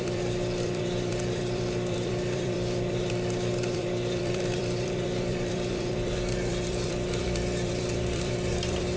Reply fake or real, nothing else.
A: fake